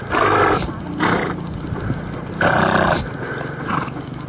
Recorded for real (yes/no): yes